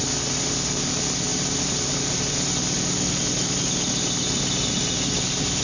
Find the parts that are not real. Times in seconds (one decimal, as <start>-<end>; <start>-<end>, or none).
1.3-1.9